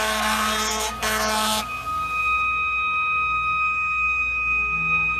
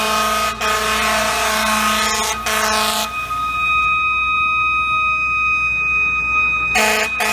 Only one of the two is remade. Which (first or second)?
first